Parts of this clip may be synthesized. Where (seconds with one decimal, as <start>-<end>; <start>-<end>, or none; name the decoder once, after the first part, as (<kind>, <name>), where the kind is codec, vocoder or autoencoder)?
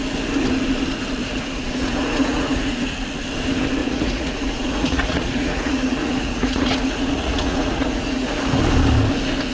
1.2-2.9 (vocoder, Vocos); 3.8-8.6